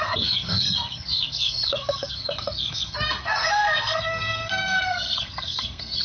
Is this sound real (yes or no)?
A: no